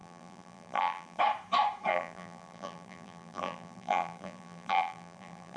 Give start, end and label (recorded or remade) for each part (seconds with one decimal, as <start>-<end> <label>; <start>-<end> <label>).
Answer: 0.0-1.2 remade; 1.2-1.9 recorded; 1.9-5.6 remade